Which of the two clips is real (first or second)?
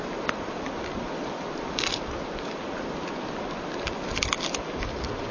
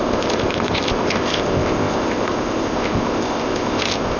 first